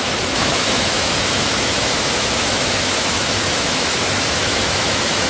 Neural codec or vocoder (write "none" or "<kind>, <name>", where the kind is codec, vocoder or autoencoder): autoencoder, DAC-VAE